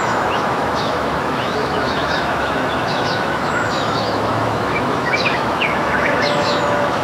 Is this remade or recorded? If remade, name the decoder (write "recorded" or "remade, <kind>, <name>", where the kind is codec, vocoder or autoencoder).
remade, autoencoder, DAC-VAE